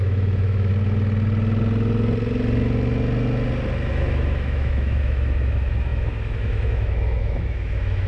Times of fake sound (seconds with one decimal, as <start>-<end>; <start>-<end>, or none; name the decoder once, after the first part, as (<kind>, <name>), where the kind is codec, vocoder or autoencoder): 0.0-0.7 (autoencoder, DAC-VAE); 3.9-8.1